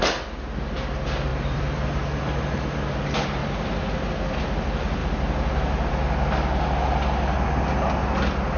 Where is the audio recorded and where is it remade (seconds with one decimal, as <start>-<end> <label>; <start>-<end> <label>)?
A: 0.0-8.6 recorded